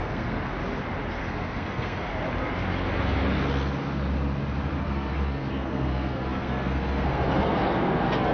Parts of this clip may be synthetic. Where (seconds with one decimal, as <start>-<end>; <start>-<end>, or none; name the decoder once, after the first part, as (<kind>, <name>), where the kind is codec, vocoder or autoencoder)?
0.0-0.5 (codec, SNAC); 1.2-2.1; 4.8-8.3